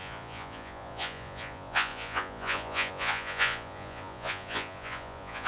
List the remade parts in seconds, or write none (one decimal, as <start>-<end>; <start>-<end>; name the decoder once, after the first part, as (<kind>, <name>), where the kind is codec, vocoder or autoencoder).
0.0-5.5 (vocoder, Vocos)